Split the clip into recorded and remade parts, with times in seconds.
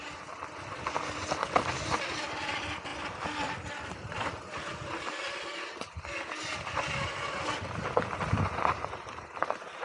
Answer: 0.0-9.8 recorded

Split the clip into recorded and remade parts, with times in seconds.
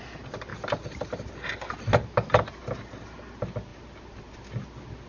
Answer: 0.0-0.5 recorded; 0.5-2.6 remade; 2.6-3.7 recorded; 3.7-4.3 remade; 4.3-5.1 recorded